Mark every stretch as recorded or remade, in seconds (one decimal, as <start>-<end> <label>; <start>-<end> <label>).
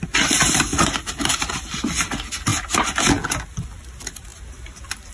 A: 0.0-5.1 recorded